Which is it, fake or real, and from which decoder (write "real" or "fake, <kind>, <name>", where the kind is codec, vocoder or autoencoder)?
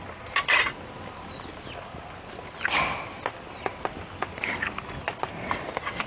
real